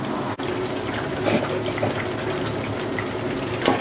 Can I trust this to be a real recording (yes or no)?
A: yes